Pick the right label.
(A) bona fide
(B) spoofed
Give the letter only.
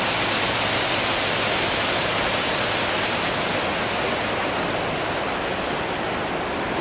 A